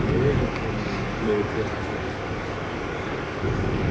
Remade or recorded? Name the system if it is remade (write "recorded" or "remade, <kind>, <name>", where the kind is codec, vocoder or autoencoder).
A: remade, codec, DAC